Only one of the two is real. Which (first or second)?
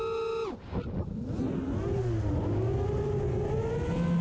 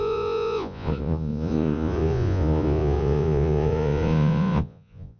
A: first